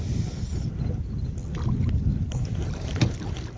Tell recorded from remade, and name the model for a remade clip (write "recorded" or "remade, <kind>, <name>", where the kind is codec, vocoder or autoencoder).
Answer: recorded